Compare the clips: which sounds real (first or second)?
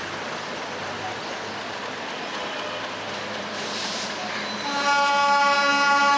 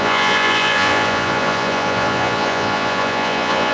first